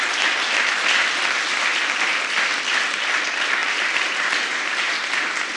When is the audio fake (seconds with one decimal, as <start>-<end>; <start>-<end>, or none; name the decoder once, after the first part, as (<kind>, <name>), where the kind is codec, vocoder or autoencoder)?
1.0-2.5 (vocoder, BigVGAN v2); 3.6-4.5